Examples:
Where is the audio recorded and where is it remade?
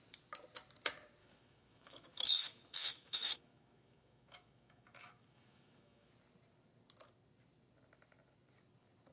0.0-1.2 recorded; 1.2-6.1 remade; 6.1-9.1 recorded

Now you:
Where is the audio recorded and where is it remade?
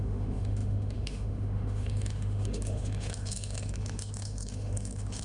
0.0-5.2 remade